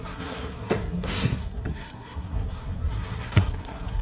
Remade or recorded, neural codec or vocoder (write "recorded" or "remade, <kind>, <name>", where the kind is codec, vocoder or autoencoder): remade, codec, SNAC